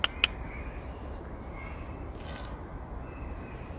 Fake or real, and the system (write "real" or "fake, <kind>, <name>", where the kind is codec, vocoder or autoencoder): real